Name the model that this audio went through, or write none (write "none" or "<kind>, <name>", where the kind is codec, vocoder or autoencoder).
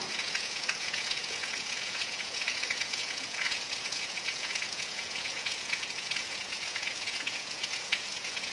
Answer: vocoder, Vocos